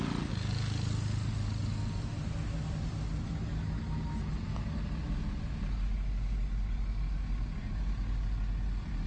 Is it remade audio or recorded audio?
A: recorded